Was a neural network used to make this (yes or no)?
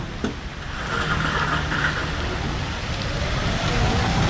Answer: no